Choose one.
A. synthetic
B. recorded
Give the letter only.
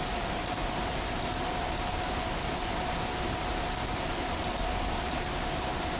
B